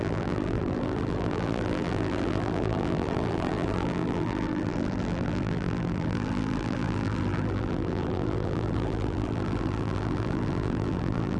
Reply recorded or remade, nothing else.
remade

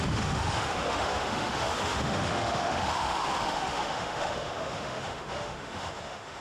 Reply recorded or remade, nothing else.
remade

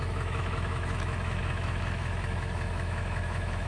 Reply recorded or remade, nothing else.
remade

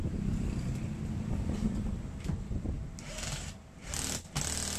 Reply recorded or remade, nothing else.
recorded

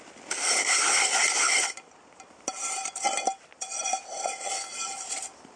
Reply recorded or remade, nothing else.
remade